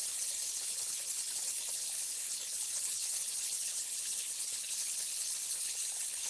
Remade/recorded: remade